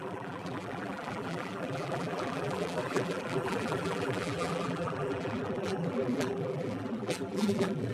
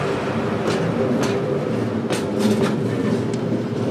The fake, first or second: first